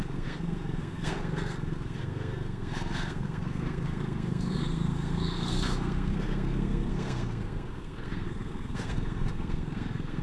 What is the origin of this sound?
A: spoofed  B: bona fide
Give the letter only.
A